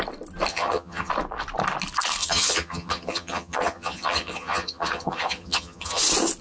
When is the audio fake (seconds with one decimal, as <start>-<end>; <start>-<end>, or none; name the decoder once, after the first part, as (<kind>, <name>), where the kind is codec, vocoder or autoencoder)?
0.5-1.1 (vocoder, HiFi-GAN); 2.2-6.0